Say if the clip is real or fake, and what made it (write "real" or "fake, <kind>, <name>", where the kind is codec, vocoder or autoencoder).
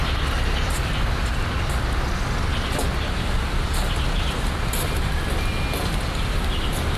real